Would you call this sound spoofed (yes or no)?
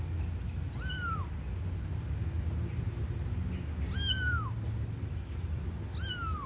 no